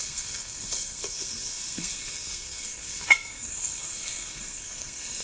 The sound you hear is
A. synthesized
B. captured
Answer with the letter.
A